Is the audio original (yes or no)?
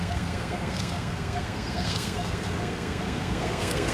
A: no